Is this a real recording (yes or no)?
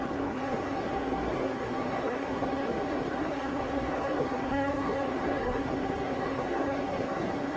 no